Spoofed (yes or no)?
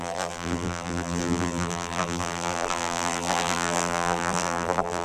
yes